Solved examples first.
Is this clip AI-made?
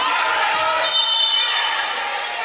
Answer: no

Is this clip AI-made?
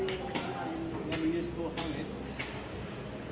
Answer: no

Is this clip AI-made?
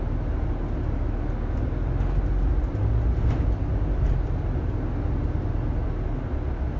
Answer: no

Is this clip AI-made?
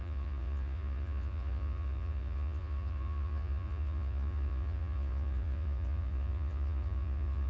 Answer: yes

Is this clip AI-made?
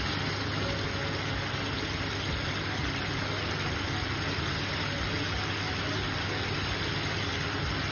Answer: no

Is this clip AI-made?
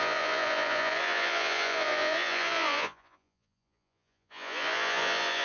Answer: yes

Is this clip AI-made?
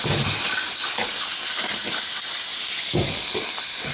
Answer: no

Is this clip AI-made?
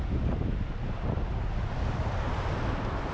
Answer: no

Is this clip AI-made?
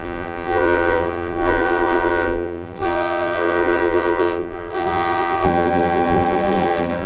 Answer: yes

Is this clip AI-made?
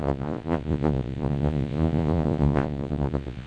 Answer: yes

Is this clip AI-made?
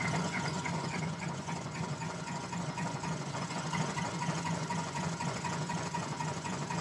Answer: yes